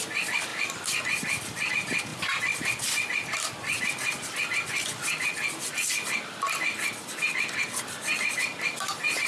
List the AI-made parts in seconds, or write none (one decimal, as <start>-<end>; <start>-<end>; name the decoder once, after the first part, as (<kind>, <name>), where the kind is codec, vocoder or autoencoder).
none